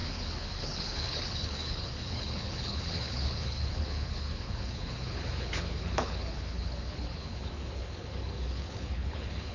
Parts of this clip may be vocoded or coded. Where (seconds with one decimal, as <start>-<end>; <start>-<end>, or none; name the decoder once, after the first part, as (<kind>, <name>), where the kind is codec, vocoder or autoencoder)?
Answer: 0.0-9.5 (codec, HILCodec)